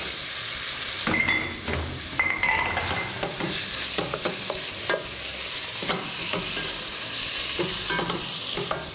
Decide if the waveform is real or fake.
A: real